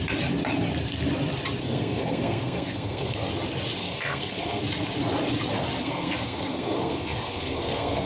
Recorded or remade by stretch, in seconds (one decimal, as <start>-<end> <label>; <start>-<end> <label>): 0.0-1.6 recorded; 1.6-3.3 remade; 3.3-3.8 recorded; 3.8-4.6 remade; 4.6-5.8 recorded; 5.8-8.1 remade